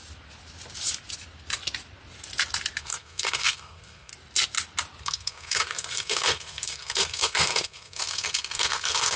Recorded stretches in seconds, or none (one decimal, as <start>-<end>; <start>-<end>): 0.0-2.8; 4.1-5.0